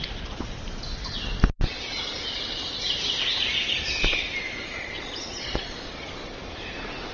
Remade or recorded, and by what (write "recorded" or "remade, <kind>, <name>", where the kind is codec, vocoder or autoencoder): recorded